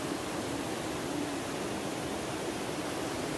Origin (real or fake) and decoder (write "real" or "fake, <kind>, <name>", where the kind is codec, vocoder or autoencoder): real